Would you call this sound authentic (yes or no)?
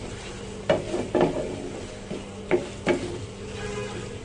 yes